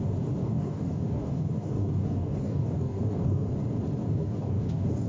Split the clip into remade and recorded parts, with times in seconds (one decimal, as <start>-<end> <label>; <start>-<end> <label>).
0.0-0.4 recorded; 0.4-3.5 remade; 3.5-4.0 recorded; 4.0-5.1 remade